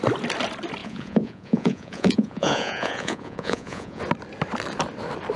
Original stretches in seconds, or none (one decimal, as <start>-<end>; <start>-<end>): 0.0-0.8; 4.0-5.4